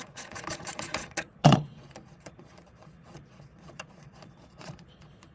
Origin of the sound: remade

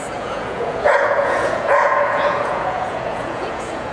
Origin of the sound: remade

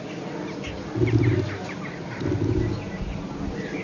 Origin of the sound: recorded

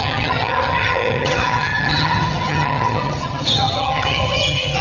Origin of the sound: remade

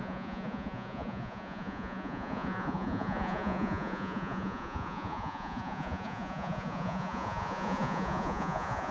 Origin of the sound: remade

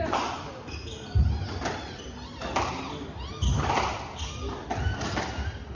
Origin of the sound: recorded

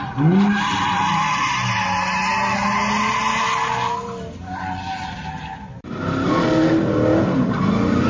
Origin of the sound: recorded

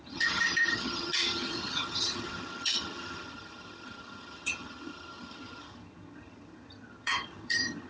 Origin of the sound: remade